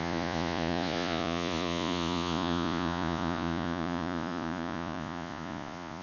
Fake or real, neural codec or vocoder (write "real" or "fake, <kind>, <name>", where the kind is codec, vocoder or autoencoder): fake, vocoder, Vocos